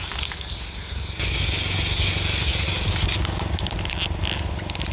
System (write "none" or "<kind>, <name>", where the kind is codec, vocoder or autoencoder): none